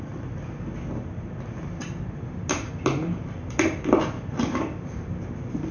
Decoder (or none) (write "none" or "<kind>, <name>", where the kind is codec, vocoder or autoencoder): none